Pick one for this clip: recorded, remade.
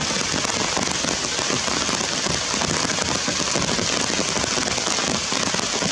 recorded